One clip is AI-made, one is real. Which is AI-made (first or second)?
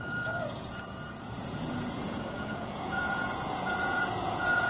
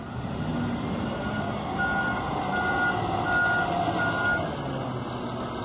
first